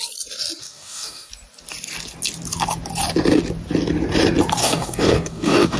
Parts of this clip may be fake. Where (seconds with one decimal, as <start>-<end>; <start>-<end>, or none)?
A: 0.6-1.3; 4.6-5.8